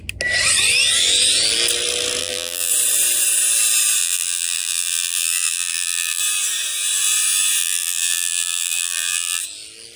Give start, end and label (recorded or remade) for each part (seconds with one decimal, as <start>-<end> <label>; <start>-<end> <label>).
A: 0.0-2.2 recorded; 2.2-2.7 remade; 2.7-4.0 recorded; 4.0-6.2 remade; 6.2-7.6 recorded; 7.6-9.4 remade; 9.4-10.0 recorded